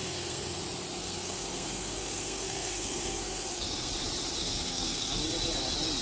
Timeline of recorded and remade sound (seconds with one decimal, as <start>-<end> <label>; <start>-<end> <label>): 0.0-0.6 remade; 0.6-1.0 recorded; 1.0-3.9 remade; 3.9-4.4 recorded; 4.4-5.2 remade; 5.2-6.0 recorded